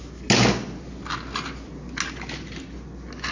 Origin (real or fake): real